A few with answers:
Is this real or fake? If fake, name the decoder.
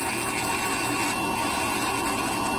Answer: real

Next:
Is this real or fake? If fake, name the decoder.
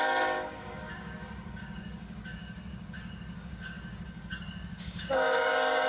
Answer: fake, codec, DAC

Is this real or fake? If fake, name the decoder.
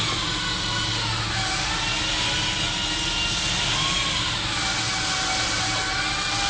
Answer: real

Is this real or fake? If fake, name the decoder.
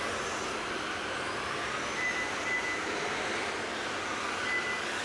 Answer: real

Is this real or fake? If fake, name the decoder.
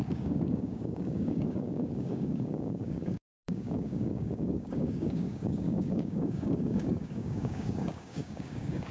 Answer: fake, codec, DAC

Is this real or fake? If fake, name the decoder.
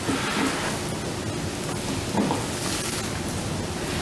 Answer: real